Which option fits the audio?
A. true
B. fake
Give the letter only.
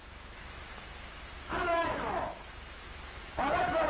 B